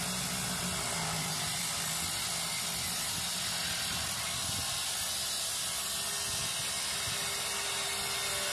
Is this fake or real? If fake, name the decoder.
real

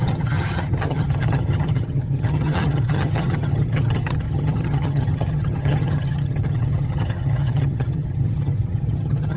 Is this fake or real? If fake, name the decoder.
fake, vocoder, HiFi-GAN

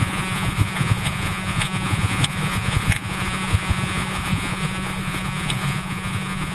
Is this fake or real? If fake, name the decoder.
fake, vocoder, Vocos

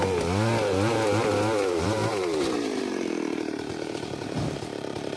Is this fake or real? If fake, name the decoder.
fake, vocoder, BigVGAN v2